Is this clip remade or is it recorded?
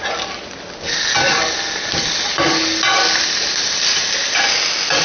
recorded